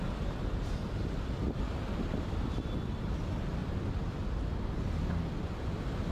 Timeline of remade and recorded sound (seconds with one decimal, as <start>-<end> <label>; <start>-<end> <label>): 0.0-3.6 recorded; 3.6-5.0 remade; 5.0-6.1 recorded